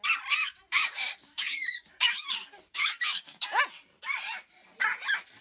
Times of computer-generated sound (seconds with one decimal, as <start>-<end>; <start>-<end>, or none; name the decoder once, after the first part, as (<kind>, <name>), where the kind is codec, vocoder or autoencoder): 0.4-3.6 (codec, DAC)